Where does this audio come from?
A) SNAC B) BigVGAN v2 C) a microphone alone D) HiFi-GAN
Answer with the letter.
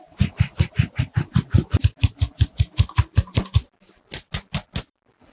C